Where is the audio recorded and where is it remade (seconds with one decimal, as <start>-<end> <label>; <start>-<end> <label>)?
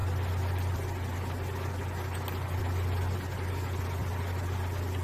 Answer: 0.0-5.0 recorded